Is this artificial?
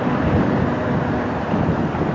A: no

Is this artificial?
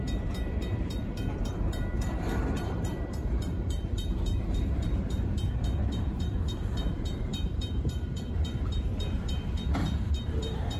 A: yes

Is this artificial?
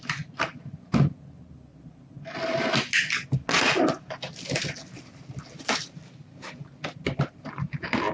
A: no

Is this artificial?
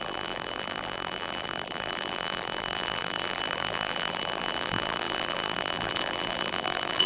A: yes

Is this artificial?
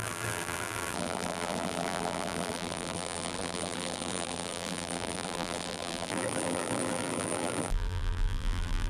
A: yes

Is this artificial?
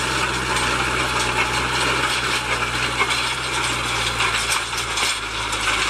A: no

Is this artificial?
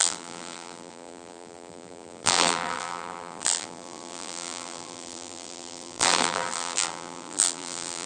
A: yes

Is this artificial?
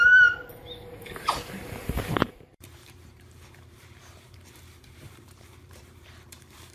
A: yes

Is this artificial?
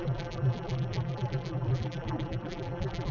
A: yes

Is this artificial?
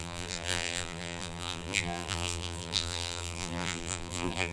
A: yes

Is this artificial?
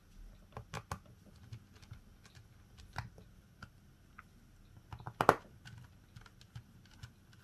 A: no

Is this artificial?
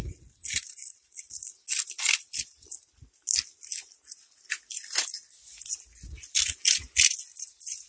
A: no